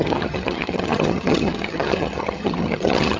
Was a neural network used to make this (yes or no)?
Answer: yes